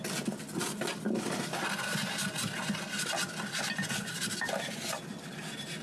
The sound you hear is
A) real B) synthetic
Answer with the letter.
A